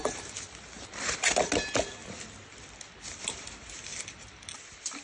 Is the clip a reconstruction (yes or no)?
no